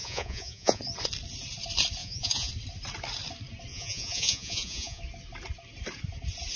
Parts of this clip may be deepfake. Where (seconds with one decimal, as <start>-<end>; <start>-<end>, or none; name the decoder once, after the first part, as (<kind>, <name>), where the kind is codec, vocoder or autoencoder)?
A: 0.0-0.8 (vocoder, Vocos); 2.0-2.5; 3.7-5.0

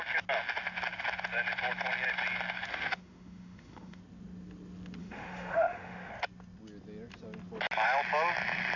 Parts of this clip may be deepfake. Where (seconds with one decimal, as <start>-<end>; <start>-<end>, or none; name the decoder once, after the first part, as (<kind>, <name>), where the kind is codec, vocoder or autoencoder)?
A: 2.7-4.0 (autoencoder, DAC-VAE); 5.0-6.1